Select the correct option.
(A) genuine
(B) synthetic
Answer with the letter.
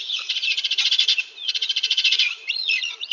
B